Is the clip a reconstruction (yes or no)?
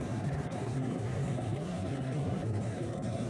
yes